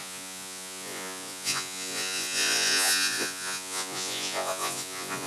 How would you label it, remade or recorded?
remade